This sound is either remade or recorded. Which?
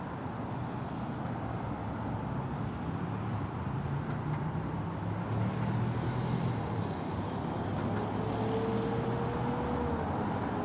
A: recorded